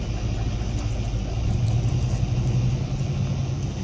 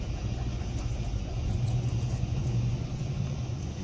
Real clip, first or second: first